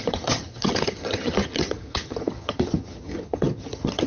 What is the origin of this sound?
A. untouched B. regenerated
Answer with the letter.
B